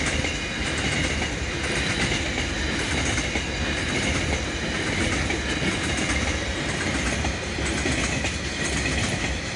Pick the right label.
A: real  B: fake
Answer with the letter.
A